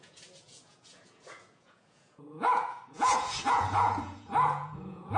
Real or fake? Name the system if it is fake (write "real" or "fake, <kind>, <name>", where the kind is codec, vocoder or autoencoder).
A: fake, vocoder, Vocos